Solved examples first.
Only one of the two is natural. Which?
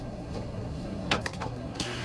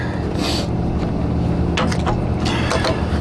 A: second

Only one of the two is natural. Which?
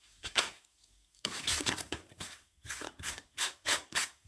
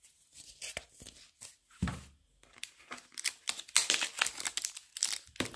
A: second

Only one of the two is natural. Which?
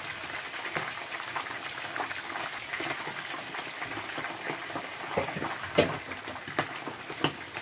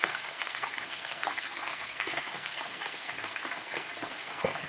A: first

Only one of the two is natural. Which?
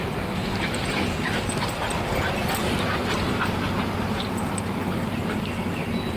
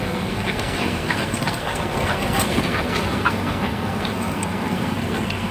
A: first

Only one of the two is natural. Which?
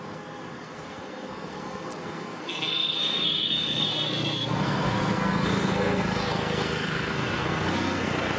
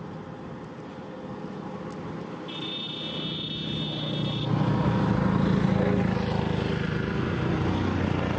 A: second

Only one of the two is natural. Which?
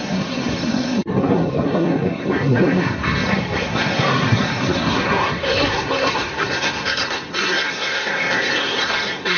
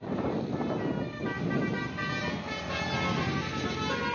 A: second